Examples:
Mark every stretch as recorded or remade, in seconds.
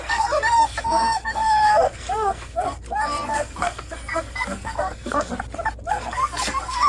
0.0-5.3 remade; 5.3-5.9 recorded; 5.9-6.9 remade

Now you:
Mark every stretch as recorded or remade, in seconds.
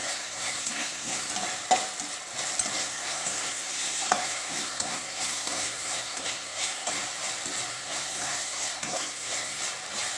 0.0-1.3 remade; 1.3-2.8 recorded; 2.8-6.9 remade; 6.9-7.7 recorded; 7.7-9.6 remade; 9.6-10.2 recorded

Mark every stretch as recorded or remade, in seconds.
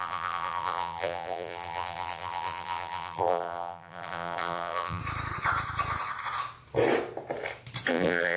0.0-5.0 remade; 5.0-7.9 recorded; 7.9-8.4 remade